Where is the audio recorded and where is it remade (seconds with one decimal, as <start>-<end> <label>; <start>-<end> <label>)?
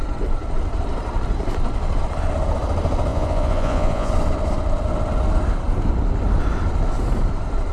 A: 0.0-3.1 recorded; 3.1-4.1 remade; 4.1-7.7 recorded